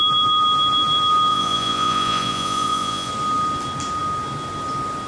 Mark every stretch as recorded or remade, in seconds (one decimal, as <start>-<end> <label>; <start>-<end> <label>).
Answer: 0.0-1.3 recorded; 1.3-3.1 remade; 3.1-5.1 recorded